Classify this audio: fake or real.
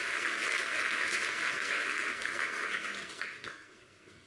fake